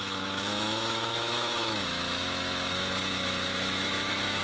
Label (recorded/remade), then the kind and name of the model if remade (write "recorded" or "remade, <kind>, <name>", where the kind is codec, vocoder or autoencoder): remade, autoencoder, DAC-VAE